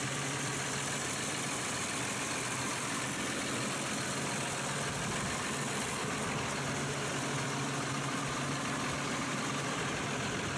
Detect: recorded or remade recorded